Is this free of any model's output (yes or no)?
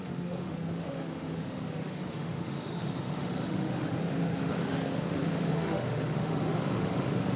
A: no